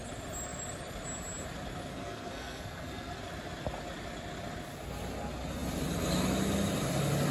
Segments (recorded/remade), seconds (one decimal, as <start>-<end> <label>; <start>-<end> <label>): 0.0-1.9 recorded; 1.9-3.2 remade; 3.2-7.3 recorded